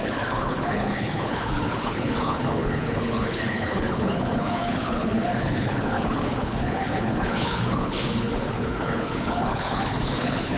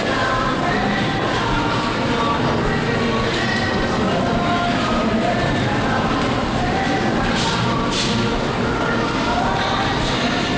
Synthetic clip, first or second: first